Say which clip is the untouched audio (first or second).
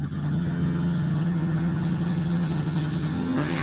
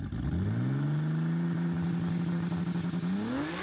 second